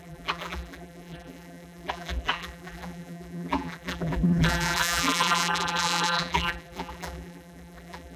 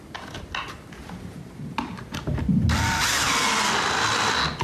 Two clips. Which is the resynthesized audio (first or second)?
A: first